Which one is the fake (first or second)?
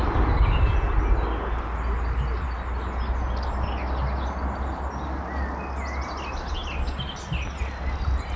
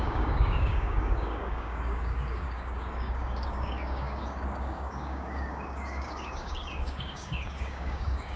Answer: second